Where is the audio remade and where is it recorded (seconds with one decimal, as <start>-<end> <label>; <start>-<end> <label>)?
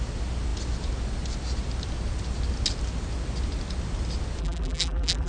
0.0-4.4 recorded; 4.4-5.3 remade